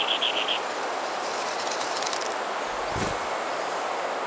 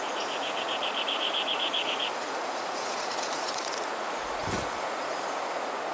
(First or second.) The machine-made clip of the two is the second